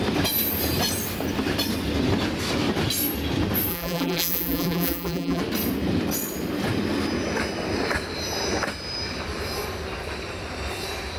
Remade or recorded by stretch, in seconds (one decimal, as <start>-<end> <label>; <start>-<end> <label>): 0.0-3.7 recorded; 3.7-5.4 remade; 5.4-11.2 recorded